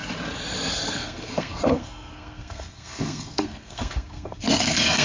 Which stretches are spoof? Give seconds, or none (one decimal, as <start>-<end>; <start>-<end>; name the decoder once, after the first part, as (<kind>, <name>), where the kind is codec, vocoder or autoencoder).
0.9-5.0 (codec, SNAC)